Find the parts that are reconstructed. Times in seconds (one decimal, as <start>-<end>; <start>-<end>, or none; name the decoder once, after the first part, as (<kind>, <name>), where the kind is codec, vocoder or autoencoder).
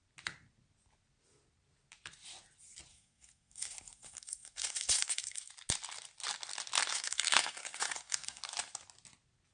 2.9-5.5 (codec, SNAC); 6.9-8.4